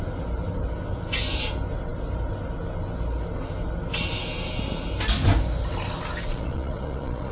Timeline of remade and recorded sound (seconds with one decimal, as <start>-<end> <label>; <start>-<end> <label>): 0.0-6.3 recorded; 6.3-7.3 remade